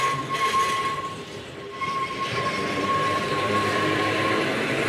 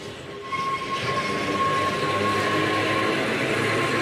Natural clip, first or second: second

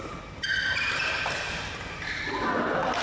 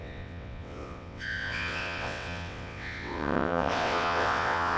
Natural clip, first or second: first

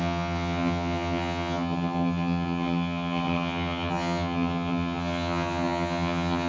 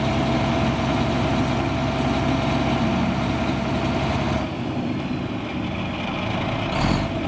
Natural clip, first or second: second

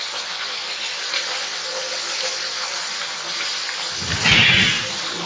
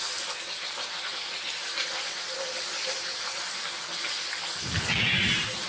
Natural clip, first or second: first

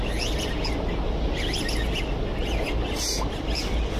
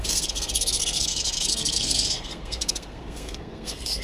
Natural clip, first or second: first